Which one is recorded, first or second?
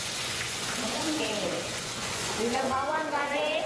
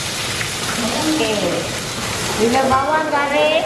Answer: second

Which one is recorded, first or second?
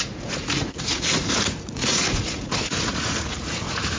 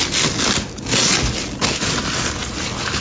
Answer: second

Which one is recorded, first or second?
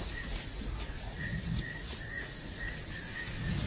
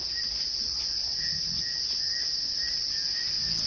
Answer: second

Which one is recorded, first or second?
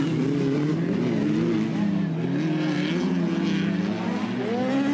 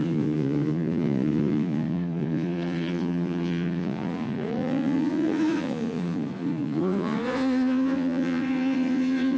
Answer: first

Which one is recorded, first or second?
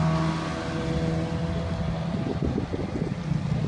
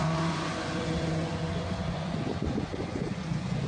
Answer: first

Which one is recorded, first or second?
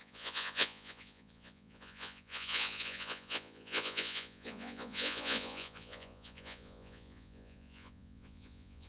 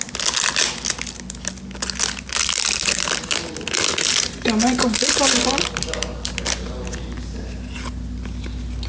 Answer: second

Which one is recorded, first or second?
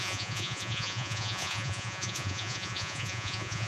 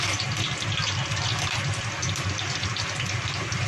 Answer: second